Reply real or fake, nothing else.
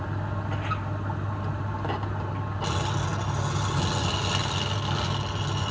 real